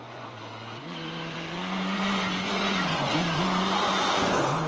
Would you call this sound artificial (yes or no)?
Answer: yes